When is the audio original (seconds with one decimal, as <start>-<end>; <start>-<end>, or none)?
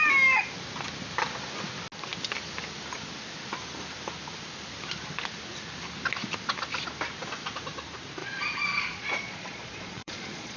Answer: 0.0-8.2